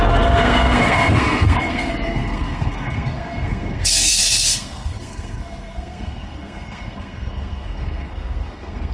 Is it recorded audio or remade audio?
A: remade